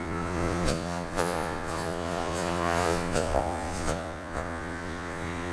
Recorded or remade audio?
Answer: remade